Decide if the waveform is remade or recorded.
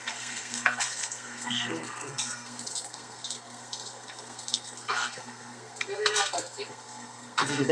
remade